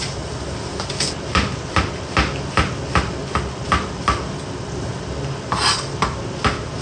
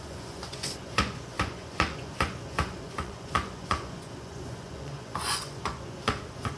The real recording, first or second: first